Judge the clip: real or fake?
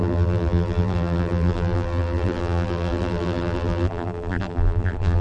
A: fake